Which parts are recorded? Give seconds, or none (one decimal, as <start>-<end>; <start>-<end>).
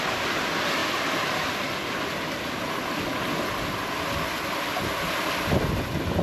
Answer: 0.0-6.2